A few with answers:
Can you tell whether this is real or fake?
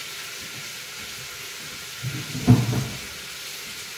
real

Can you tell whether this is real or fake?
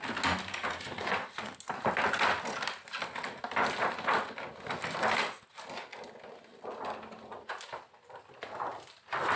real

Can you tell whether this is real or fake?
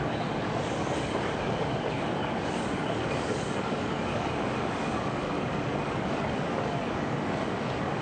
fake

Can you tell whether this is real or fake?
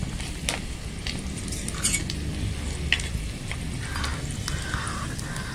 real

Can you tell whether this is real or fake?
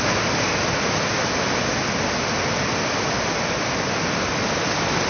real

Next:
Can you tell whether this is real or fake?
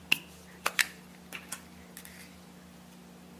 real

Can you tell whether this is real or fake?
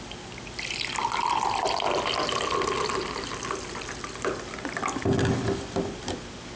real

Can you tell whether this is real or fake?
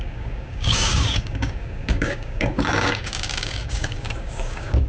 fake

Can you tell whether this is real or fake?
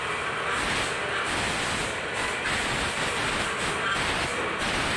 real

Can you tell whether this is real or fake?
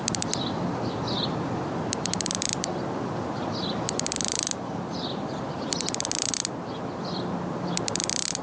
real